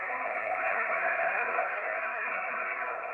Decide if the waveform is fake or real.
fake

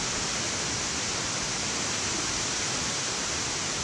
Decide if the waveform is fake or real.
real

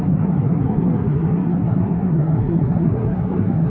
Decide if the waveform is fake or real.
fake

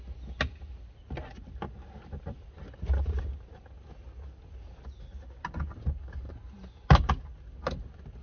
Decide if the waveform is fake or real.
real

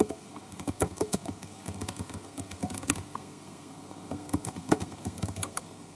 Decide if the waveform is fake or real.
fake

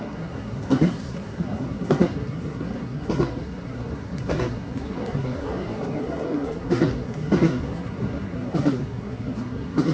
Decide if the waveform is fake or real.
fake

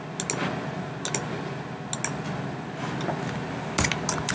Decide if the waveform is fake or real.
real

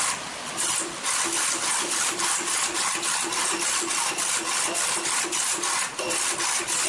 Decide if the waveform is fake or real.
real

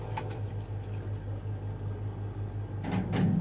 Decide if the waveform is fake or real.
real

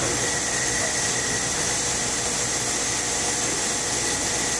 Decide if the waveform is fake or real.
real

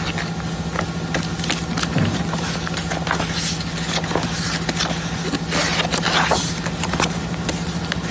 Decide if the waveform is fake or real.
real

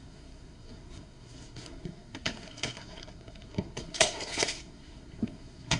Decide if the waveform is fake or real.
fake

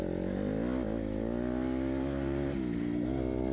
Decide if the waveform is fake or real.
real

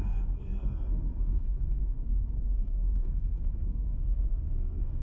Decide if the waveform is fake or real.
fake